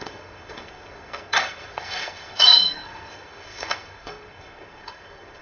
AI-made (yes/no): yes